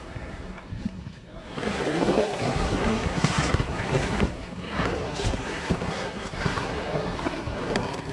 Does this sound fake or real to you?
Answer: fake